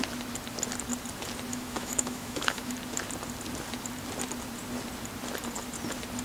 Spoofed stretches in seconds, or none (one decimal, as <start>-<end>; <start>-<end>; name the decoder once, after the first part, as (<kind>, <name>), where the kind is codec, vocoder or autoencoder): 1.5-2.7 (autoencoder, DAC-VAE)